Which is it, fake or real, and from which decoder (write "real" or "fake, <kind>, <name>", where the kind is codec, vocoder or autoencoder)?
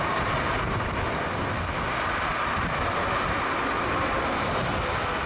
real